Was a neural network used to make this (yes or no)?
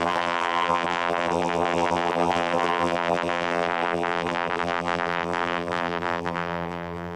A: yes